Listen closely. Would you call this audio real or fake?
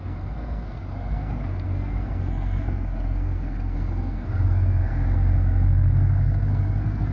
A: fake